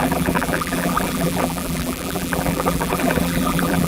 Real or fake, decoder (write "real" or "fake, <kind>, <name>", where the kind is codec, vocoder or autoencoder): fake, vocoder, BigVGAN v2